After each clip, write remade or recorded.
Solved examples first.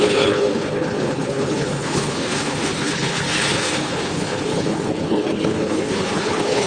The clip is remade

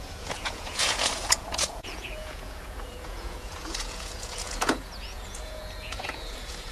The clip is remade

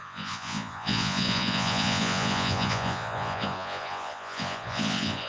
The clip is remade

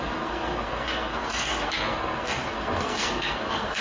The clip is remade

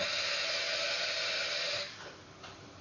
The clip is remade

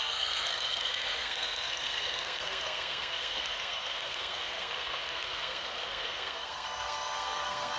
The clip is remade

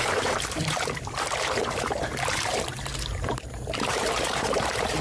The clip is remade